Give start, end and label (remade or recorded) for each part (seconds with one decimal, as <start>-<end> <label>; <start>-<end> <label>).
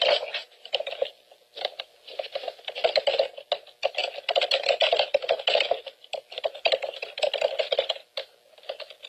0.0-9.1 recorded